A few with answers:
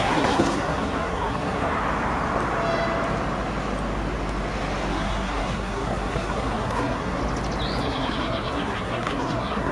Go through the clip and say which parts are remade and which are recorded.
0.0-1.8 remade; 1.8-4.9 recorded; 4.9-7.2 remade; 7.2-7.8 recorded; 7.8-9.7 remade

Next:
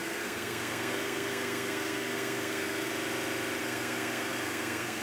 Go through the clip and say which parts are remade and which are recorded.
0.0-2.9 remade; 2.9-3.6 recorded; 3.6-5.0 remade

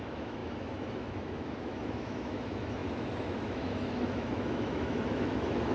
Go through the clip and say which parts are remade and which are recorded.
0.0-5.7 remade

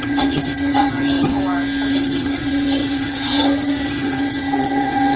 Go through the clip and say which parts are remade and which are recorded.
0.0-1.3 remade; 1.3-1.9 recorded; 1.9-5.2 remade

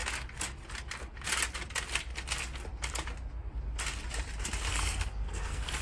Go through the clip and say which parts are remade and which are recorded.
0.0-4.7 recorded; 4.7-5.8 remade